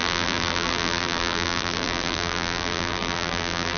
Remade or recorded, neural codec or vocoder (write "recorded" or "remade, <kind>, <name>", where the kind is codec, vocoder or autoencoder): remade, vocoder, BigVGAN v2